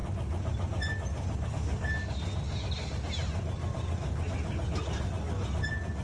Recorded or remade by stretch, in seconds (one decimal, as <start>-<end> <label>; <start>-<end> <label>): 0.0-6.0 recorded

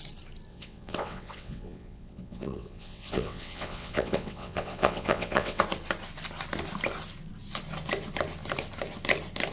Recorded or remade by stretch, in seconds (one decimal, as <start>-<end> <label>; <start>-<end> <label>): 0.0-0.5 recorded; 0.5-5.6 remade; 5.6-9.5 recorded

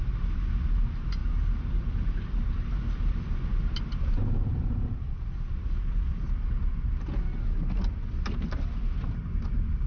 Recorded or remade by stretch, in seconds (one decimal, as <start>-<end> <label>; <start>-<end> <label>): 0.0-9.9 recorded